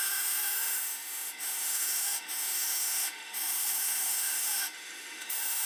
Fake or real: fake